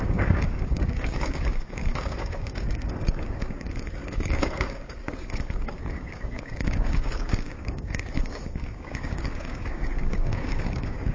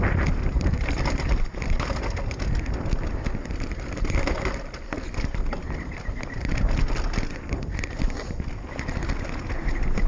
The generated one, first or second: first